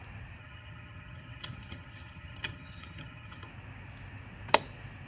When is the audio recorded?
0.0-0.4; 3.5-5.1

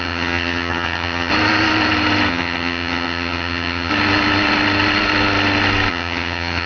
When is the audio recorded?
1.3-2.3; 3.9-5.9

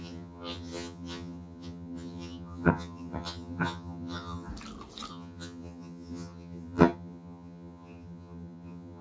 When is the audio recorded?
4.5-5.1